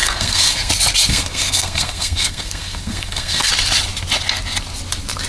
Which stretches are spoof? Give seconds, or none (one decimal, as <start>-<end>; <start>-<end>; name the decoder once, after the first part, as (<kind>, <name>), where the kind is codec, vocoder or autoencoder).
0.0-0.7 (codec, SNAC); 1.1-3.5